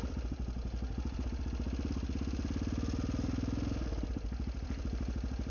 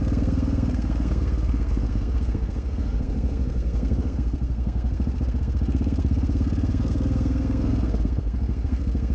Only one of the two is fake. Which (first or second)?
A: second